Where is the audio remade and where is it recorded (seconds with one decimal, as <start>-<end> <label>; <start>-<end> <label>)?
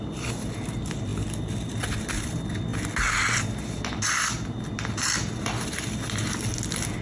0.0-7.0 recorded